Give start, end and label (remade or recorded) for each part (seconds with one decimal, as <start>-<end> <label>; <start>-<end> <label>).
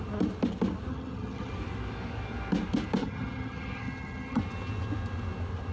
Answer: 0.0-0.9 recorded; 0.9-1.5 remade; 1.5-3.0 recorded; 3.0-4.4 remade; 4.4-5.7 recorded